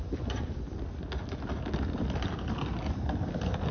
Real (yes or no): yes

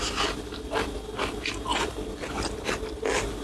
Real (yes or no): yes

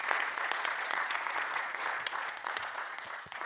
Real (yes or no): no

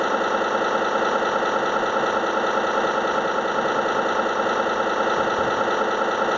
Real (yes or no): yes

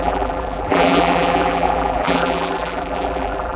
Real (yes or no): no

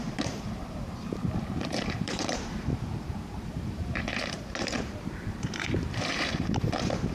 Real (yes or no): no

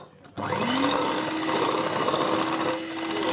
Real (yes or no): yes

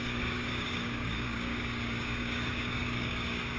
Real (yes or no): no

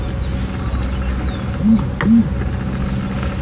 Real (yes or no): yes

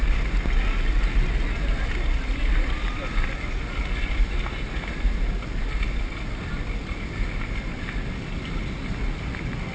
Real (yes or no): yes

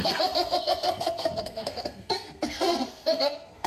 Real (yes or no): no